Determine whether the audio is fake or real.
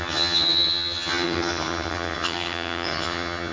fake